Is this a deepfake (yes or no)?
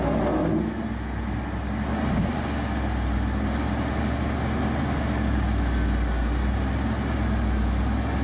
no